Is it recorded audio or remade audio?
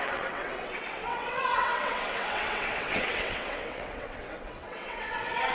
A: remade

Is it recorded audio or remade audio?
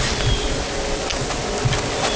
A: recorded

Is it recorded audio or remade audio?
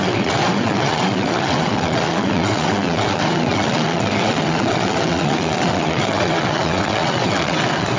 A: remade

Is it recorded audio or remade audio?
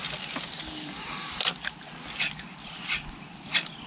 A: recorded